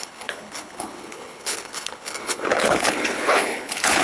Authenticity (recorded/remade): remade